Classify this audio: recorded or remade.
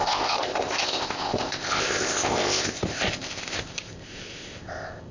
remade